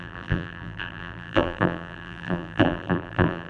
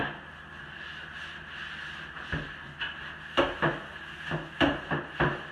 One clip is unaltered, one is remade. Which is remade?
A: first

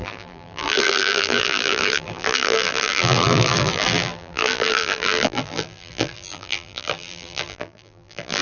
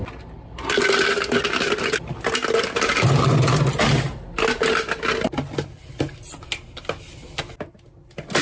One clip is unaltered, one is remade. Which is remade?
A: first